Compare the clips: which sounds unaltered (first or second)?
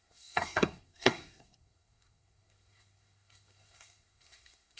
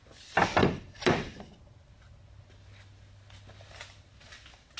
second